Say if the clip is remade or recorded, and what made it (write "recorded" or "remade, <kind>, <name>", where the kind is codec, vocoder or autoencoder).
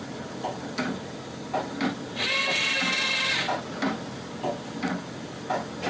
recorded